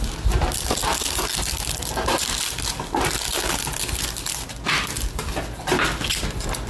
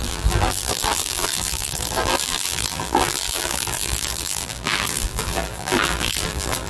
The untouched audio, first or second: first